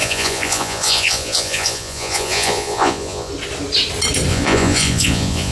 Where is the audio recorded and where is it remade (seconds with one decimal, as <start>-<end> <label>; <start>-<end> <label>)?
0.0-3.3 remade; 3.3-4.3 recorded; 4.3-5.5 remade